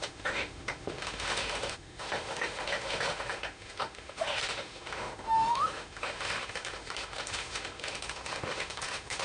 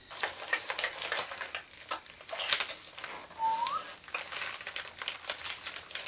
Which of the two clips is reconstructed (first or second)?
first